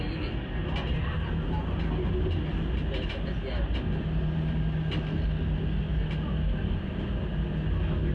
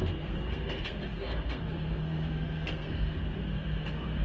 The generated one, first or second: second